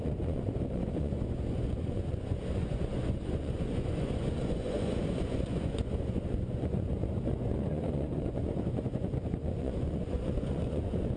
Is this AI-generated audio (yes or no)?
yes